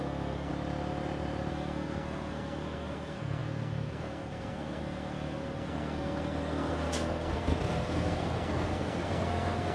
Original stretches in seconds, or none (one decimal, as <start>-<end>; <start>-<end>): 0.5-1.5